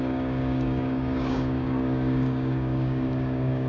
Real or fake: fake